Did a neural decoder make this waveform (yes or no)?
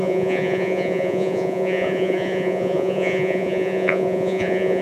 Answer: yes